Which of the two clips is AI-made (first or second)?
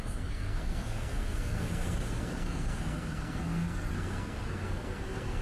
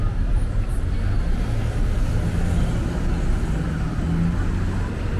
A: first